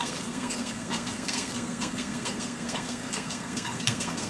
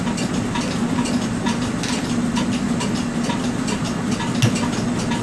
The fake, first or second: first